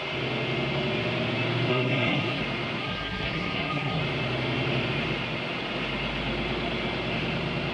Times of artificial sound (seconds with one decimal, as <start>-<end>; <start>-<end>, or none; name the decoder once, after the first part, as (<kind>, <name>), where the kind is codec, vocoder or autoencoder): 1.7-2.4 (codec, SNAC); 2.8-4.0

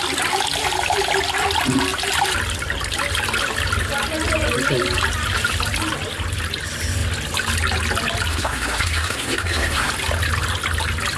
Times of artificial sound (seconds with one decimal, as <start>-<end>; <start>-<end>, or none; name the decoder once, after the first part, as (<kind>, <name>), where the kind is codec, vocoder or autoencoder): 8.3-9.9 (codec, SNAC)

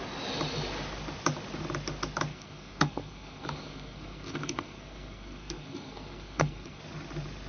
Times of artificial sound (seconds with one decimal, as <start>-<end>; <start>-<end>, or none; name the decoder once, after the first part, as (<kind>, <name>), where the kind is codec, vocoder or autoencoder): 2.3-6.8 (codec, SNAC)

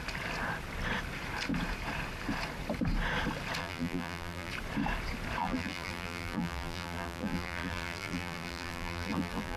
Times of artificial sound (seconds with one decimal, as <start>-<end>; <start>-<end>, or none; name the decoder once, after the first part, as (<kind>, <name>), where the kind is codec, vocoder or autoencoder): 3.6-4.5 (vocoder, BigVGAN v2); 5.4-9.6